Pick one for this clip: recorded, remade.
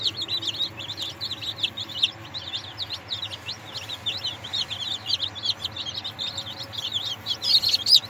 recorded